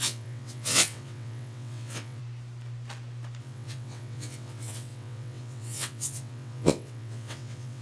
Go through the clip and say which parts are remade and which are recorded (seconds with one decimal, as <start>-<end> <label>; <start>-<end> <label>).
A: 0.0-2.2 remade; 2.2-3.4 recorded; 3.4-7.8 remade